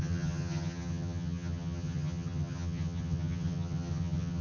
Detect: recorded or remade remade